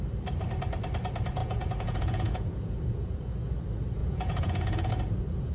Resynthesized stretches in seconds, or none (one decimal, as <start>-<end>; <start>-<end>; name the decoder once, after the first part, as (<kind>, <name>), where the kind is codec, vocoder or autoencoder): 1.4-3.6 (vocoder, Vocos); 4.0-4.9